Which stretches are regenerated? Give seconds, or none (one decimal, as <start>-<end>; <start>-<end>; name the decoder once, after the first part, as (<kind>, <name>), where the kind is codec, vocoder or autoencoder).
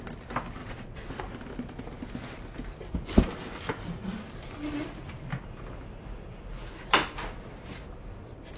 0.6-1.2 (vocoder, Vocos)